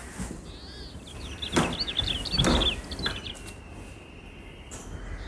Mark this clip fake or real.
real